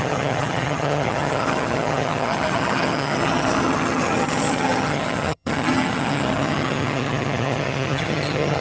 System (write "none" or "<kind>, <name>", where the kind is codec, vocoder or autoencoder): vocoder, HiFi-GAN